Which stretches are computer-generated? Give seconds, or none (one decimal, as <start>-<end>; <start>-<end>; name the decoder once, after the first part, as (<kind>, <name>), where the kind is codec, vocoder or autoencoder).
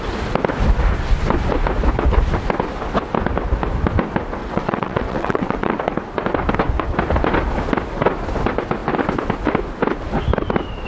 4.4-5.8 (vocoder, WaveNeXt)